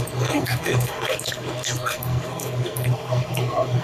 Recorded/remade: remade